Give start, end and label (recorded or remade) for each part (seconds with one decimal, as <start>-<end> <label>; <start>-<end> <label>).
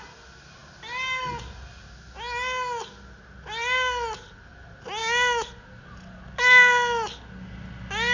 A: 0.0-8.1 recorded